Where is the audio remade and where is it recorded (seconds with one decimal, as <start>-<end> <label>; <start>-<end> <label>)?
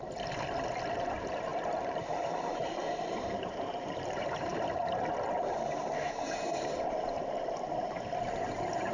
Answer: 0.0-0.9 recorded; 0.9-4.5 remade; 4.5-5.1 recorded; 5.1-8.9 remade